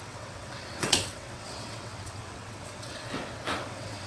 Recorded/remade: remade